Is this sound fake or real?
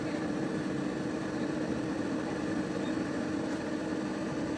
fake